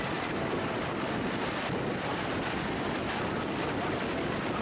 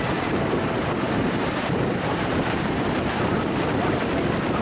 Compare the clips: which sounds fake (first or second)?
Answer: second